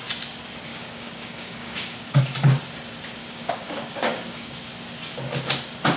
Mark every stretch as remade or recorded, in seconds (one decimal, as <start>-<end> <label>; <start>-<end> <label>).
0.0-0.7 recorded; 0.7-2.2 remade; 2.2-3.2 recorded; 3.2-4.6 remade; 4.6-6.0 recorded